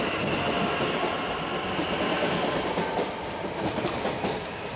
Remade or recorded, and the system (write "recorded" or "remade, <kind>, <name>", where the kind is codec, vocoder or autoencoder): recorded